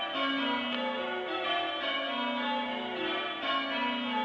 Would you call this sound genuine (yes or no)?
yes